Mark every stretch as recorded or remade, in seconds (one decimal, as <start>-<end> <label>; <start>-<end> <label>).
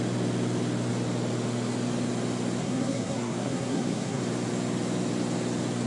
0.0-2.6 recorded; 2.6-4.2 remade; 4.2-5.9 recorded